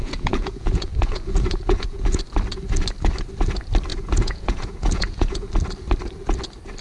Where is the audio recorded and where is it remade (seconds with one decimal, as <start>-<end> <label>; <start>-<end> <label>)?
0.0-2.2 remade; 2.2-3.9 recorded; 3.9-5.5 remade; 5.5-6.8 recorded